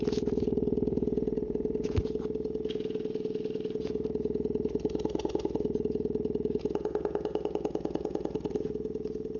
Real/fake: fake